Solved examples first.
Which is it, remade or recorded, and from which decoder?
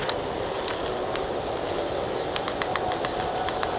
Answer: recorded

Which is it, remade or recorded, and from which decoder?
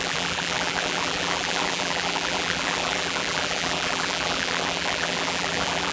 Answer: remade, vocoder, BigVGAN v2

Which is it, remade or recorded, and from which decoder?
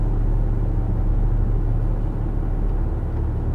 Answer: recorded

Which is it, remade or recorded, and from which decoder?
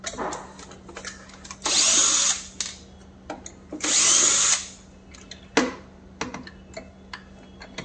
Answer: recorded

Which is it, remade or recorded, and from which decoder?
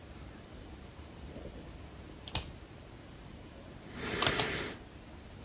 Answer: recorded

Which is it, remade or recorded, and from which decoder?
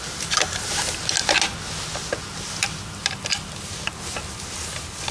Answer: recorded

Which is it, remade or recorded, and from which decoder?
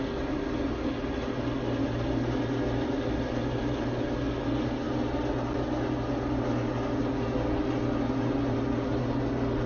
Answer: recorded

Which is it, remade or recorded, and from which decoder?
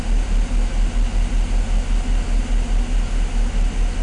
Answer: recorded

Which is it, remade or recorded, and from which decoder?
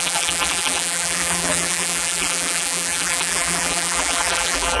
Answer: remade, vocoder, BigVGAN v2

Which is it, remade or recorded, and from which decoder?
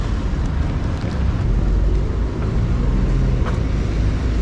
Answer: recorded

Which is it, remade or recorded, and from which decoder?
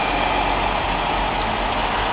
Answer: recorded